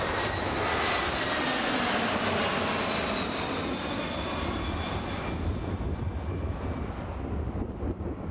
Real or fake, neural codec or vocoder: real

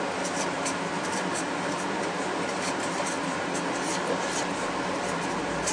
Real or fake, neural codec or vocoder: fake, vocoder, BigVGAN v2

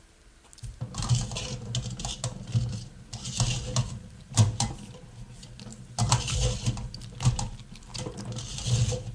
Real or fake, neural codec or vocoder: real